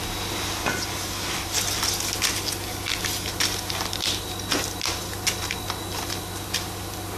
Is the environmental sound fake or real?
real